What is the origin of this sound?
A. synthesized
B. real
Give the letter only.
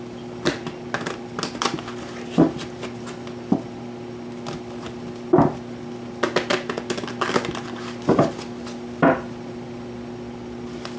B